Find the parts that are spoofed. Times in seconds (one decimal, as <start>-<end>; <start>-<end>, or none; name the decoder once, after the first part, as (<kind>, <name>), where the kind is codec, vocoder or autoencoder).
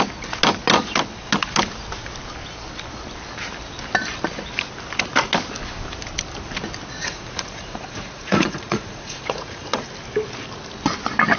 7.0-9.9 (vocoder, Vocos)